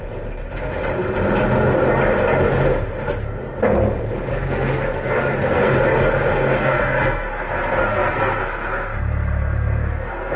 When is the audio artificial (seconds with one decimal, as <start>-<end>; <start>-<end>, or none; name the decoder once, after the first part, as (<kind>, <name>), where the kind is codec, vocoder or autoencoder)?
4.3-5.7 (codec, SNAC); 6.3-10.4